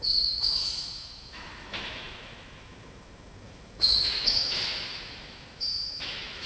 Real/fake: fake